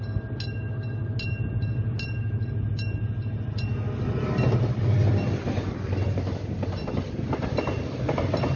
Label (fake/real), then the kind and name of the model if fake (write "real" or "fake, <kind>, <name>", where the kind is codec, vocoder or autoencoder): real